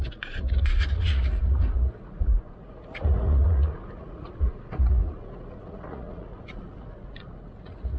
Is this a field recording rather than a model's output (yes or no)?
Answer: no